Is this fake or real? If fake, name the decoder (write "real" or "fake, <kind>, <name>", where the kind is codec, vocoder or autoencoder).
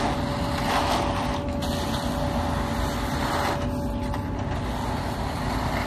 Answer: real